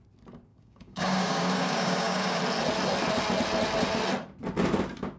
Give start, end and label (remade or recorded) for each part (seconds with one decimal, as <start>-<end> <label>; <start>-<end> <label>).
0.0-0.5 recorded; 0.5-2.4 remade; 2.4-5.2 recorded